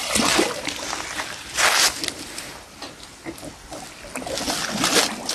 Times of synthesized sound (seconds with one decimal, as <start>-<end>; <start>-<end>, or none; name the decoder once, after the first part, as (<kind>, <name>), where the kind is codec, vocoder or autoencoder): none